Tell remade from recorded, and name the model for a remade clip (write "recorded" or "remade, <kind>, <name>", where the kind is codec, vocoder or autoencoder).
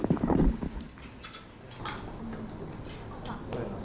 recorded